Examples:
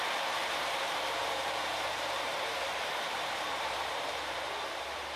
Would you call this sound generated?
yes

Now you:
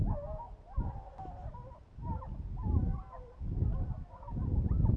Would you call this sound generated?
no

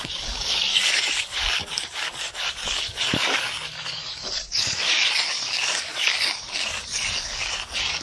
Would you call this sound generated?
yes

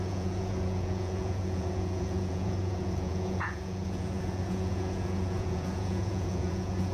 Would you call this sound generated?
yes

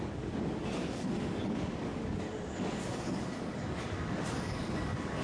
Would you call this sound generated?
yes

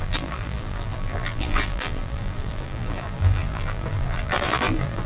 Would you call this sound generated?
yes